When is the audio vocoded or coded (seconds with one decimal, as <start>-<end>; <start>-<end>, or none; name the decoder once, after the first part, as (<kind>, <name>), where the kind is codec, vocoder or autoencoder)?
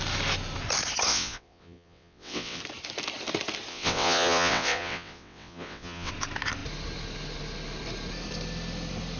1.1-2.6 (vocoder, WaveNeXt); 3.7-6.1